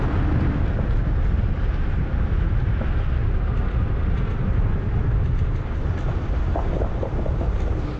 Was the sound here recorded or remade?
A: recorded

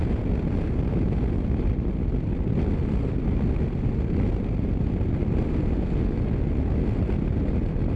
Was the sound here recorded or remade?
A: recorded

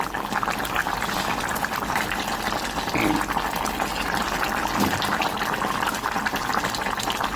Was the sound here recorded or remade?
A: recorded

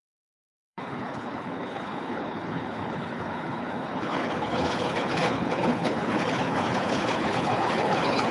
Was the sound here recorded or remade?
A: remade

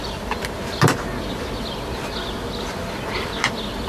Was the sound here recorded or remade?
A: recorded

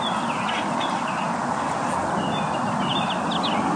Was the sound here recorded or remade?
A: recorded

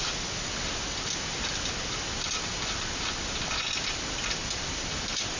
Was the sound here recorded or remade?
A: recorded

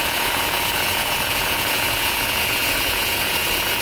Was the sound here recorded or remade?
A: remade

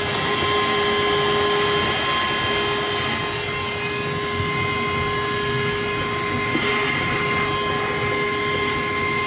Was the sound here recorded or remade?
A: recorded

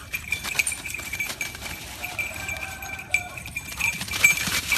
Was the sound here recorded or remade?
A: remade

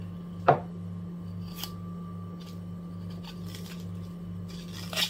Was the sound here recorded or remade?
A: recorded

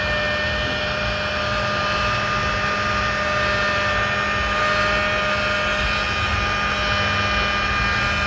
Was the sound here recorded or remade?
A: recorded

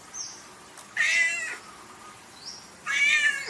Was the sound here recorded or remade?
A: recorded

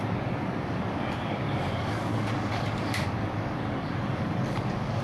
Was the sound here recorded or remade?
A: remade